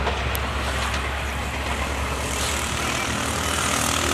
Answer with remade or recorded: recorded